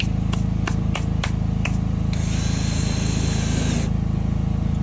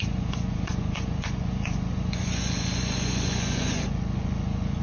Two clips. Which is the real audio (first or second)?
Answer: first